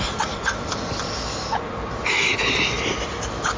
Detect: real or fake real